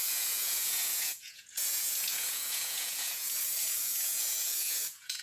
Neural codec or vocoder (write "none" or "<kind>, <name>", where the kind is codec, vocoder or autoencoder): vocoder, Vocos